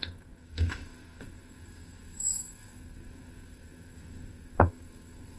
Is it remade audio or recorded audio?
remade